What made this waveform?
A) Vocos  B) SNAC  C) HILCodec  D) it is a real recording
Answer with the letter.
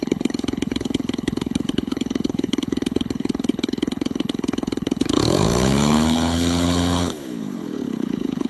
C